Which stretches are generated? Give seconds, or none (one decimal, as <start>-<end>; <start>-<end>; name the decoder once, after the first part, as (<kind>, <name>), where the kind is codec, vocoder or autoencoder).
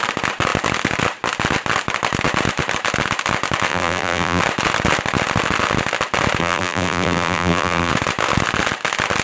3.7-4.4 (vocoder, BigVGAN v2); 6.4-7.9